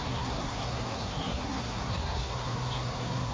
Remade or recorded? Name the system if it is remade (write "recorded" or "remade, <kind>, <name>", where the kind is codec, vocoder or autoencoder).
remade, codec, SNAC